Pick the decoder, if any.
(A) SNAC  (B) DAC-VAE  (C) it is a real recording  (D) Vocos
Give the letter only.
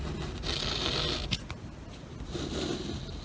C